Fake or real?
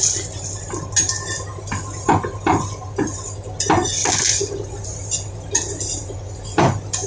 real